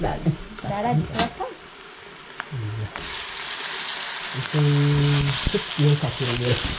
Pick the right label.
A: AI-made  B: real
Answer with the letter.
B